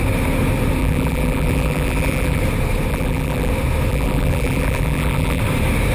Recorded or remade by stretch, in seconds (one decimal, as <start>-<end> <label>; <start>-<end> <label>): 0.0-0.8 recorded; 0.8-2.4 remade; 2.4-2.9 recorded; 2.9-3.5 remade; 3.5-3.9 recorded; 3.9-5.4 remade; 5.4-5.9 recorded